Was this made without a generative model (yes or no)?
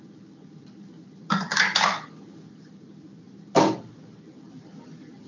yes